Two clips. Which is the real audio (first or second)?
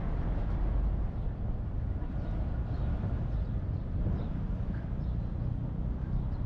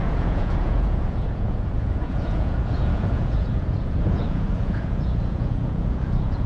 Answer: first